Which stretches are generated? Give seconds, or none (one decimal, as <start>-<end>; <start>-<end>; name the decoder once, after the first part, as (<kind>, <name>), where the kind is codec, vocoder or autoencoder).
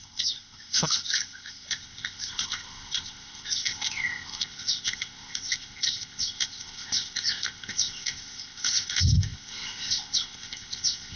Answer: 0.0-11.2 (codec, ZipCodec)